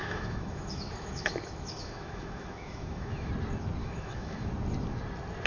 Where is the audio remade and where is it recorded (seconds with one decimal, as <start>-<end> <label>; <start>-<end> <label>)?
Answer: 0.0-3.3 remade; 3.3-3.8 recorded; 3.8-4.5 remade; 4.5-5.5 recorded